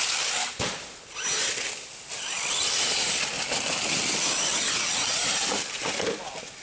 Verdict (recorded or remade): recorded